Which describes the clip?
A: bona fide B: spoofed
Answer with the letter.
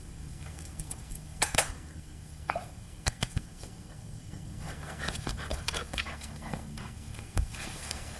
B